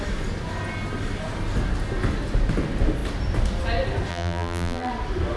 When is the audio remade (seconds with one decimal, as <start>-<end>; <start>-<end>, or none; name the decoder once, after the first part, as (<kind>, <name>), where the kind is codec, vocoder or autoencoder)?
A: 4.1-4.9 (vocoder, BigVGAN v2)